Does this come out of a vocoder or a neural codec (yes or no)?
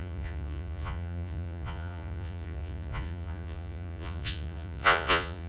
yes